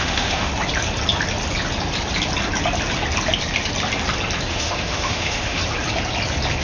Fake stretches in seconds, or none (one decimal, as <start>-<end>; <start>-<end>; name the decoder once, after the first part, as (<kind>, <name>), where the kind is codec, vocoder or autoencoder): 0.0-0.5 (autoencoder, DAC-VAE); 4.5-5.6